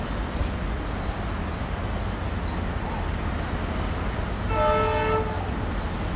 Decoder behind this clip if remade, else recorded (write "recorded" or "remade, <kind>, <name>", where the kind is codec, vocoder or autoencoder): recorded